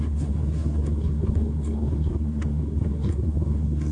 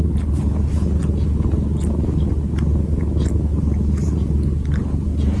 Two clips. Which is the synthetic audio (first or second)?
first